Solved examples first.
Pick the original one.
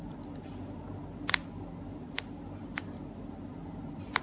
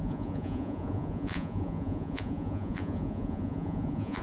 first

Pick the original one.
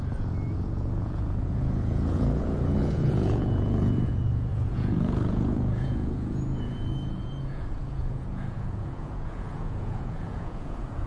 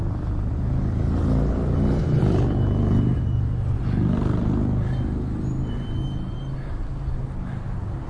second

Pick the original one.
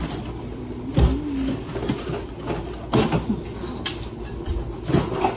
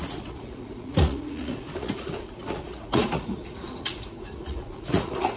first